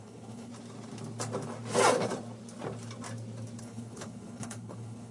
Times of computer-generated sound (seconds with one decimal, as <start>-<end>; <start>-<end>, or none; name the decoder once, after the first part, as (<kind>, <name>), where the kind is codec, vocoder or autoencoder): 0.0-0.5 (codec, HILCodec); 3.6-5.1